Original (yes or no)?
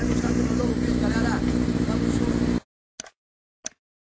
yes